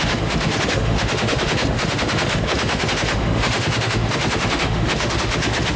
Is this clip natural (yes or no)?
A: no